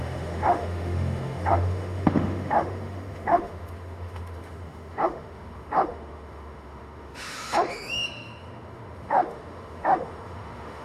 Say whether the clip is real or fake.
fake